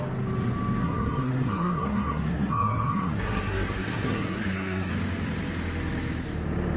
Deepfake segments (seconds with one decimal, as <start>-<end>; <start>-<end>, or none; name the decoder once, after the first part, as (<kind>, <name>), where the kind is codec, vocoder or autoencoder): 0.8-4.9 (codec, SNAC)